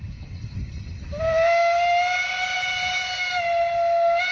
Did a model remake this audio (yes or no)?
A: no